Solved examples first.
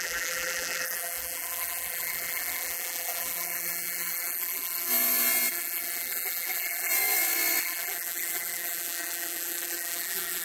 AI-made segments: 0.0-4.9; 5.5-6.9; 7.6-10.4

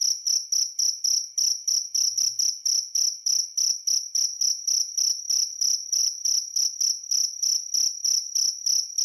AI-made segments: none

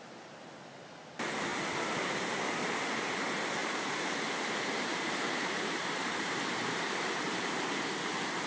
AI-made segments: 3.6-7.9